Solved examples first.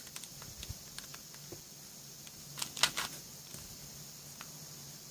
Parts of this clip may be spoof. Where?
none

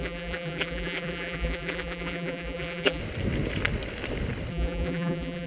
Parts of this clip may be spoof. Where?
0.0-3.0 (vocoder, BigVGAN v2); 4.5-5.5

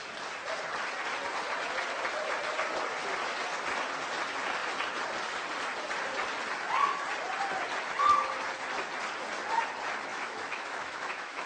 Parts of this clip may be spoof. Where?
10.1-11.5 (autoencoder, DAC-VAE)